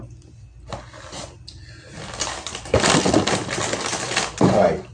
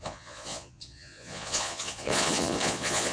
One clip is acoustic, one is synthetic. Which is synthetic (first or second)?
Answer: second